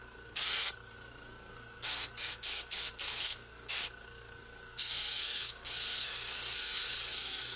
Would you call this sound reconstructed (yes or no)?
yes